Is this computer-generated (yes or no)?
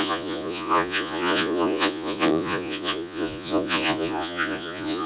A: yes